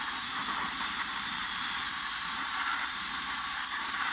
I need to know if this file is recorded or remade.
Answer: remade